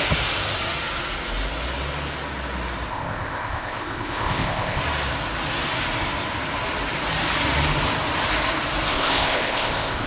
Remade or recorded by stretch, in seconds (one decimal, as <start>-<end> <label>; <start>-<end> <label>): 0.0-2.9 recorded; 2.9-4.8 remade; 4.8-8.9 recorded; 8.9-10.1 remade